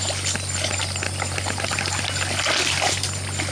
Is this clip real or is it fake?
real